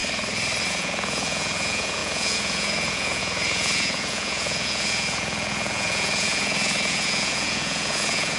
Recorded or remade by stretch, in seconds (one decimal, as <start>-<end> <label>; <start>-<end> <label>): 0.0-0.7 recorded; 0.7-8.4 remade